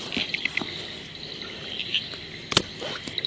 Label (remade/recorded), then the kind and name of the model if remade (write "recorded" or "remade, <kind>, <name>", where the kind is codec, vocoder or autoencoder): recorded